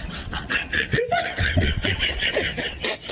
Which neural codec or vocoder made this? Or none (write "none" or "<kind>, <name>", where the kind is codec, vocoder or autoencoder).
vocoder, WaveNeXt